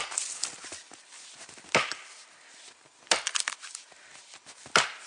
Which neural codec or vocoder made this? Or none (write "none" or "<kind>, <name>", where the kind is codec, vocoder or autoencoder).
none